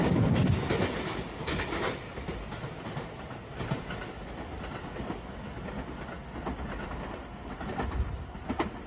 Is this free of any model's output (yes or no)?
yes